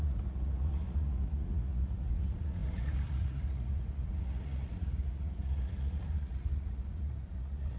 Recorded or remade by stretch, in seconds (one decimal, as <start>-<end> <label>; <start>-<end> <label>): 0.0-7.8 remade